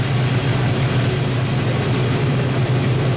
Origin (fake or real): real